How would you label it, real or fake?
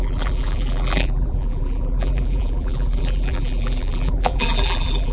fake